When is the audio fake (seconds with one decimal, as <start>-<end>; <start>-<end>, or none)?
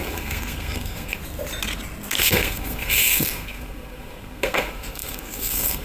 0.0-1.2; 2.2-5.8